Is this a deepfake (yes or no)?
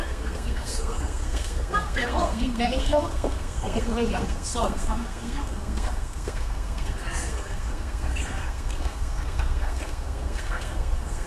yes